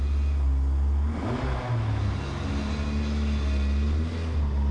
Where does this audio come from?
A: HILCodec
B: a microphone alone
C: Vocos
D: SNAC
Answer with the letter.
B